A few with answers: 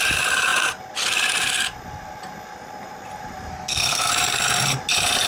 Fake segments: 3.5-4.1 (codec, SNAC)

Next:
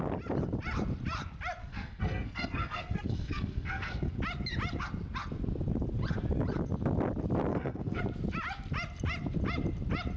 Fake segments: 1.6-4.1 (codec, SNAC); 7.5-8.0